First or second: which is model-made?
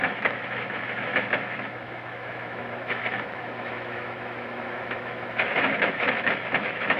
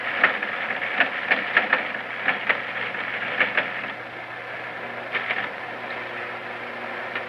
first